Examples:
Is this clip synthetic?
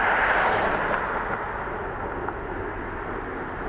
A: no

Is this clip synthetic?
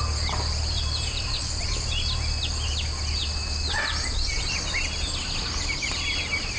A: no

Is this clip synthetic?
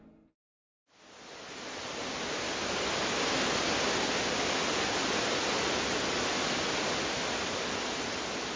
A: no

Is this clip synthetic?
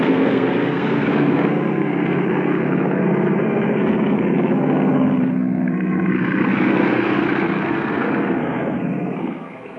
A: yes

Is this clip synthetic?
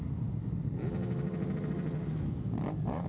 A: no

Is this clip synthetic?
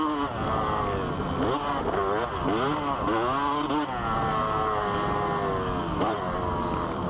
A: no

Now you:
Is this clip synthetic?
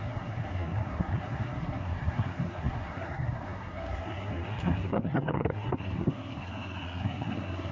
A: yes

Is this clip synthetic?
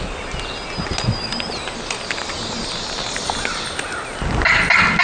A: no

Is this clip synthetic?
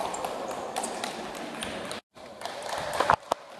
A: yes